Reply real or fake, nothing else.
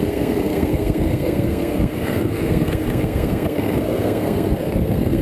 fake